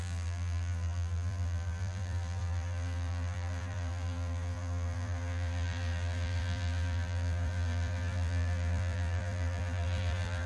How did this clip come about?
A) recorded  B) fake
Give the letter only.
B